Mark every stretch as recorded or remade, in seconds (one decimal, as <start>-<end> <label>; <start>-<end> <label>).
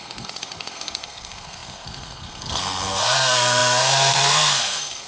0.0-5.1 remade